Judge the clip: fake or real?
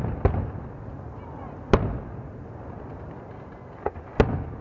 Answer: real